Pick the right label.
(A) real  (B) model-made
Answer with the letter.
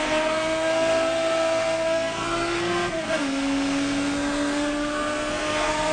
B